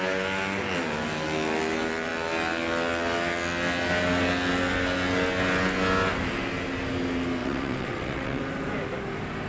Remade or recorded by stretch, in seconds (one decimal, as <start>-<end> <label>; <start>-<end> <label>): 0.0-7.4 recorded; 7.4-8.4 remade; 8.4-9.5 recorded